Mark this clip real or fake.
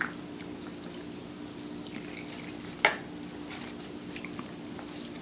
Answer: real